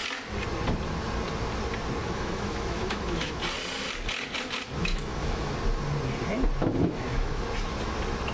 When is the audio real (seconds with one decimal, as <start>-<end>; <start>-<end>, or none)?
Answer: 0.0-2.0; 3.4-4.8; 5.5-6.6; 7.4-8.3